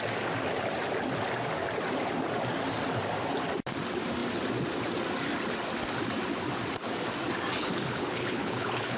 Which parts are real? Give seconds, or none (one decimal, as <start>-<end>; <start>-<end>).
0.0-7.6